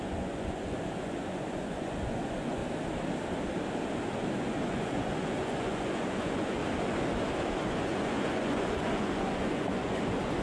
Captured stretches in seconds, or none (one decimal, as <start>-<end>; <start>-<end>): 2.6-4.4; 6.6-7.6